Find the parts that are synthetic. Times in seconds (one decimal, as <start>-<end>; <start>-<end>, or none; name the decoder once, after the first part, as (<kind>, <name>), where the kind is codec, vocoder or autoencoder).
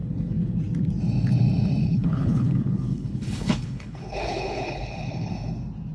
0.0-0.6 (codec, HILCodec); 1.8-5.3